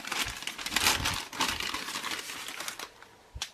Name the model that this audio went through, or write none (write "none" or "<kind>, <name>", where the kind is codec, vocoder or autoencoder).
none